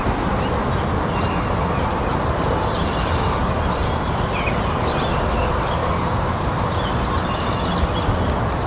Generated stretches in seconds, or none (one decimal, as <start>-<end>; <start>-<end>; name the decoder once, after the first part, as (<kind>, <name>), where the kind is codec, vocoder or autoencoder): 5.8-7.3 (vocoder, BigVGAN v2)